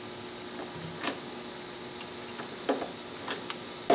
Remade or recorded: recorded